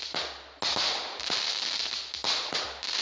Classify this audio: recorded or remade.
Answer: recorded